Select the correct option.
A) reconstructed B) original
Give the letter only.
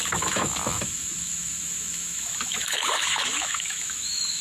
A